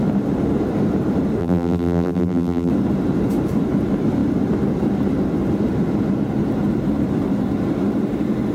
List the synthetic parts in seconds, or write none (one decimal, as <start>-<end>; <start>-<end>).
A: 1.4-2.7